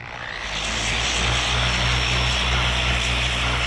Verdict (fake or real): real